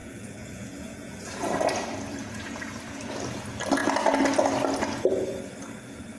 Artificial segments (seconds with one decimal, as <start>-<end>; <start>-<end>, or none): 0.0-1.2; 2.2-2.7